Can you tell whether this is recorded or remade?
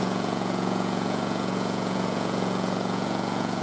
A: remade